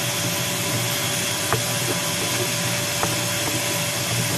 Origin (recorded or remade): recorded